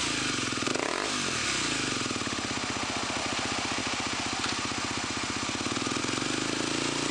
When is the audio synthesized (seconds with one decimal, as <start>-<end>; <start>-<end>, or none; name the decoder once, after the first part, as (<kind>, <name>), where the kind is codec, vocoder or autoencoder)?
none